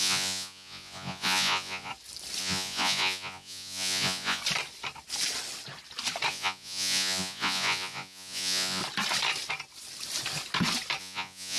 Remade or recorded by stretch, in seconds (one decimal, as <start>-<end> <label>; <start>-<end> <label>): 0.0-1.9 remade; 1.9-2.4 recorded; 2.4-4.4 remade; 4.4-6.3 recorded; 6.3-8.8 remade; 8.8-11.0 recorded; 11.0-11.6 remade